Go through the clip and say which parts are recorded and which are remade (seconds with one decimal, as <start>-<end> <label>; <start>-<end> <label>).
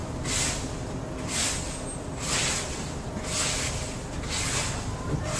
0.0-5.4 recorded